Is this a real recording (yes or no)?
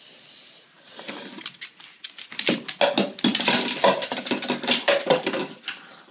yes